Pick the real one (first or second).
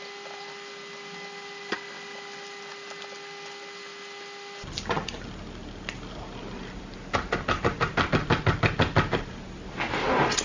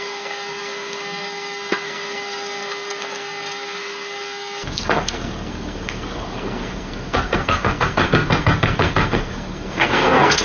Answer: first